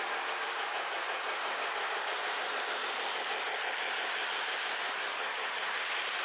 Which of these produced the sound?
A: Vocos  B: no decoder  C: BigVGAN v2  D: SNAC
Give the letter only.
B